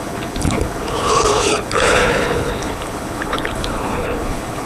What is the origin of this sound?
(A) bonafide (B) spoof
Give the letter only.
B